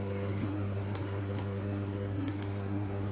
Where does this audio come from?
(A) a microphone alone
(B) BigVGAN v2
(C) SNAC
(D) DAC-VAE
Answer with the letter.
C